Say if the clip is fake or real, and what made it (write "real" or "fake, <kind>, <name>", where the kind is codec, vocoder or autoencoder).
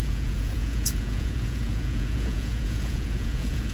fake, vocoder, Vocos